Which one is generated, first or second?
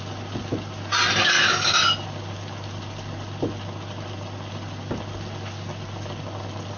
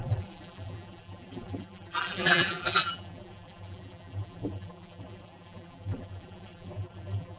second